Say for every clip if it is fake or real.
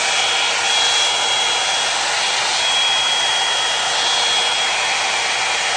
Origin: real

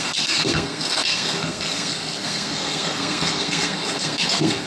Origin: fake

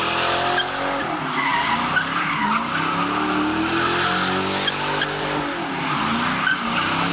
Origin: real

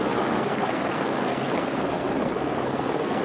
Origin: fake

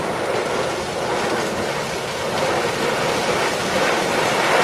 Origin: real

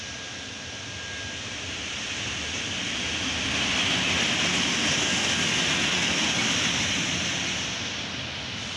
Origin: real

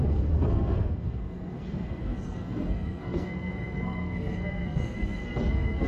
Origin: fake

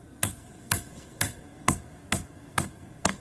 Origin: fake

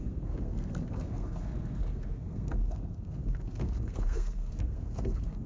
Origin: fake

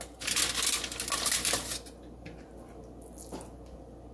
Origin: real